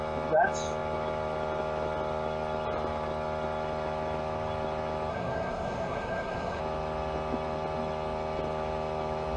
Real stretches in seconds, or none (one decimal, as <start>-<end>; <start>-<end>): 0.0-5.1; 6.6-9.4